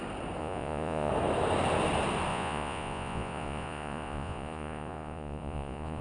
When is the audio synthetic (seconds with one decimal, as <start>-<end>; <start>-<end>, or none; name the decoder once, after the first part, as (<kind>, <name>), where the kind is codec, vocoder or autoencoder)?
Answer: 0.4-1.1 (vocoder, Vocos); 2.3-6.0